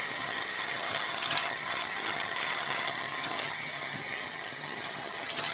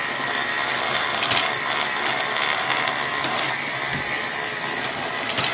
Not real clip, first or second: first